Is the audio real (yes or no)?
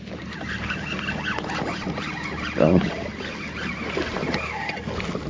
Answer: yes